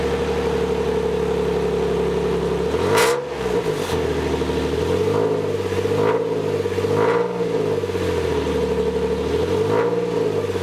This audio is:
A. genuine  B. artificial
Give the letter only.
A